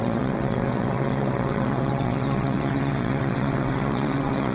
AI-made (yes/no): yes